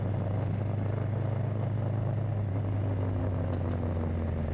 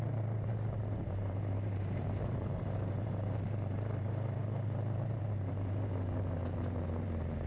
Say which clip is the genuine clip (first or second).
first